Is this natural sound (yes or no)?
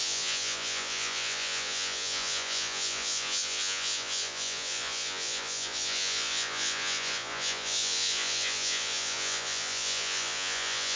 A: no